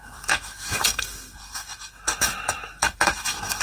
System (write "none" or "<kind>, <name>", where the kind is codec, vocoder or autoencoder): autoencoder, DAC-VAE